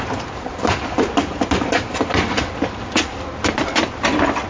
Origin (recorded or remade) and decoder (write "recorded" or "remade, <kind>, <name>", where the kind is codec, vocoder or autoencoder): recorded